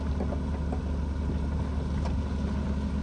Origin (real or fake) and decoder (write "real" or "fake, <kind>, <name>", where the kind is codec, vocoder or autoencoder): real